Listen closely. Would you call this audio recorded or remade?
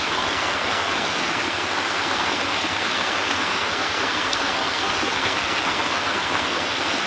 remade